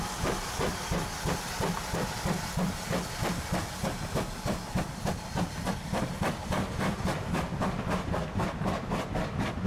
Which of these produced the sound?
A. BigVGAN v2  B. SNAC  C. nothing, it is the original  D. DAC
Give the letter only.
A